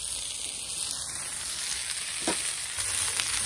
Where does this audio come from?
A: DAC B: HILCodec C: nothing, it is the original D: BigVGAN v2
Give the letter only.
C